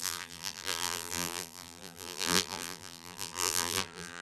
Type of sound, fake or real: fake